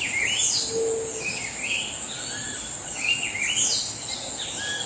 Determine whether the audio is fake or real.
real